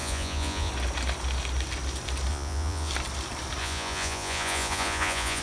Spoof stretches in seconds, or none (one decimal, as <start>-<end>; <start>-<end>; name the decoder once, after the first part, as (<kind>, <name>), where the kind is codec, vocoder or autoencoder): 0.0-0.7 (vocoder, Vocos); 2.3-2.9; 3.6-5.4